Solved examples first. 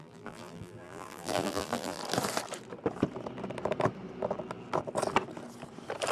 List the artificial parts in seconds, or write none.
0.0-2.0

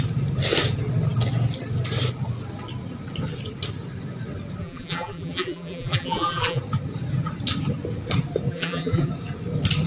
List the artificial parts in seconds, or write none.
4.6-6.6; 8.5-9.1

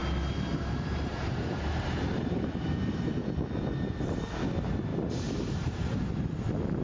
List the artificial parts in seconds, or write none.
0.0-2.8; 4.9-6.0